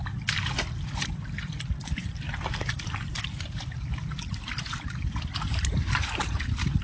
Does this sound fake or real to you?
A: real